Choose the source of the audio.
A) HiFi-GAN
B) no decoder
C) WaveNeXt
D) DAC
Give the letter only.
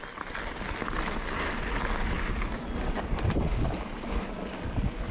B